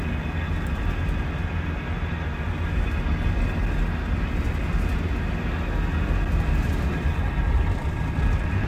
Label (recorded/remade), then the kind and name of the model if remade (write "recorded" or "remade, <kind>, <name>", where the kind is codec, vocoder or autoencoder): recorded